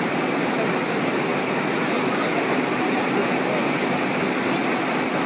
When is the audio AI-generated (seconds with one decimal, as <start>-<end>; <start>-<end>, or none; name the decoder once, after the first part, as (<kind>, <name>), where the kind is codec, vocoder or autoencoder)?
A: none